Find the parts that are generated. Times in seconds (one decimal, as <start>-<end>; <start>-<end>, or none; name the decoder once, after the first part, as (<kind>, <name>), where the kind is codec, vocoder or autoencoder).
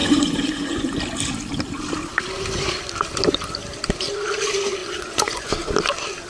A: 0.0-1.0 (vocoder, Vocos); 4.8-5.5